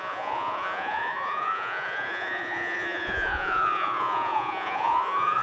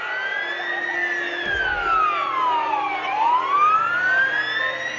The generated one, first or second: first